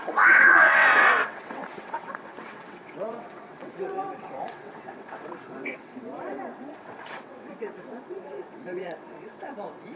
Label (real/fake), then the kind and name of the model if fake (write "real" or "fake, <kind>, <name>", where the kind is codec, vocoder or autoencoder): fake, vocoder, WaveNeXt